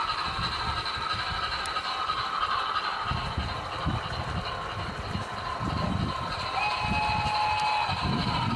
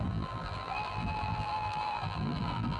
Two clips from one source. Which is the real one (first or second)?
first